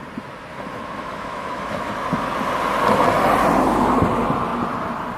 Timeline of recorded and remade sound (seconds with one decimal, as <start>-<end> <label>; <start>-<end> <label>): 0.0-0.5 recorded; 0.5-1.9 remade; 1.9-5.2 recorded